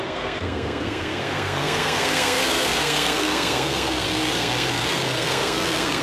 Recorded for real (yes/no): no